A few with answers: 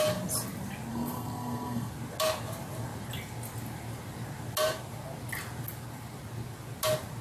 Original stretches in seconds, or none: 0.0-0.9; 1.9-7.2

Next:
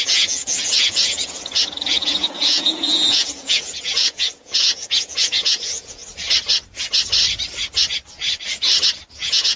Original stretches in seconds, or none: 6.0-9.1

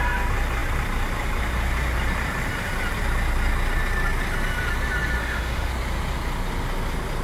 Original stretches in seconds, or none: 0.0-5.2; 5.7-7.2

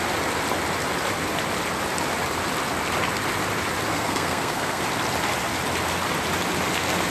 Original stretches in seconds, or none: 0.0-3.9; 4.8-7.1

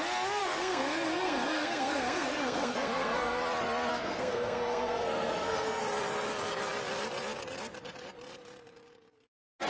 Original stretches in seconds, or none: 0.0-0.4; 3.4-3.9; 5.8-9.7

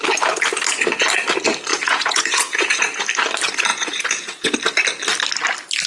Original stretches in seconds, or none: 0.0-1.7; 3.0-3.7; 4.6-5.9

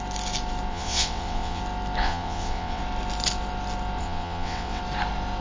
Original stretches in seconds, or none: 0.0-0.7; 1.6-2.0; 2.8-4.0; 4.8-5.4

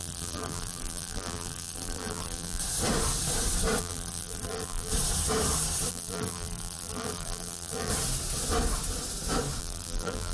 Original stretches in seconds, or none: 2.6-3.8; 4.9-5.9; 7.9-9.6